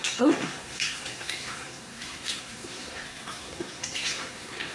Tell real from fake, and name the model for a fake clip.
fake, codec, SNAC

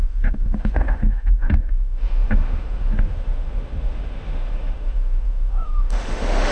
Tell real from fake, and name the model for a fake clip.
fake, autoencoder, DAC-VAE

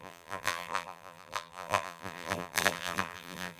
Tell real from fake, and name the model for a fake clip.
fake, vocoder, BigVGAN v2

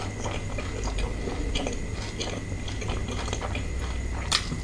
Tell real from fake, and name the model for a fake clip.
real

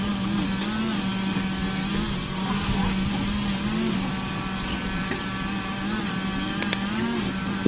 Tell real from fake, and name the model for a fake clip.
real